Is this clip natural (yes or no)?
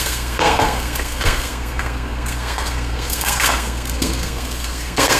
no